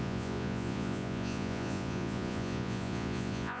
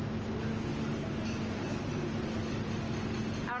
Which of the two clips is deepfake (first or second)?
first